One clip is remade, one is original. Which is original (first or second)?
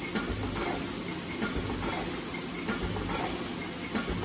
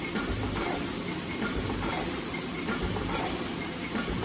first